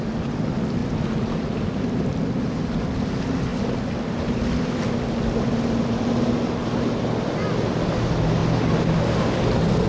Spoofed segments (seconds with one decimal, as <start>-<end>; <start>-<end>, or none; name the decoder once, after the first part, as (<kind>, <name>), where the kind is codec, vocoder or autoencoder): none